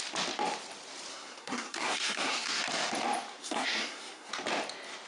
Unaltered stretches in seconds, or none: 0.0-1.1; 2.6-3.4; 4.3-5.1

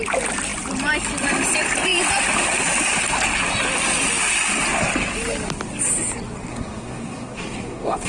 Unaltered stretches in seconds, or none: 0.0-6.5

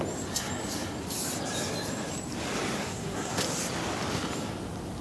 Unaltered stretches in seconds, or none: 0.0-2.8; 3.4-5.0

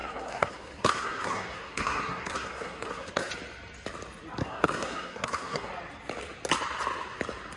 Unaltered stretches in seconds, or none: 3.3-4.4; 5.7-7.6

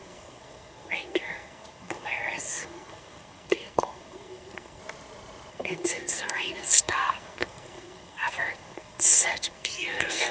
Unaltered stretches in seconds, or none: 4.8-5.5

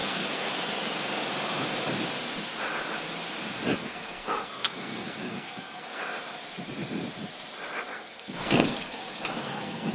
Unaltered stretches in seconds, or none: 0.5-3.8; 6.0-7.9; 9.0-9.4